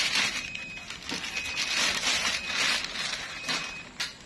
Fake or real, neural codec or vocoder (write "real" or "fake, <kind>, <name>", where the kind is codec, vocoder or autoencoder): real